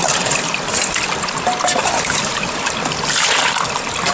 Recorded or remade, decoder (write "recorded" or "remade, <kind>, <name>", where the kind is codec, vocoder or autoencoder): recorded